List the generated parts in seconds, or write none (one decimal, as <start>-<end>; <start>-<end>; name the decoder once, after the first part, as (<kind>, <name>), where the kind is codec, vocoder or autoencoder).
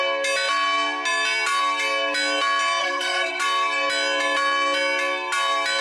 2.8-3.4 (codec, SNAC)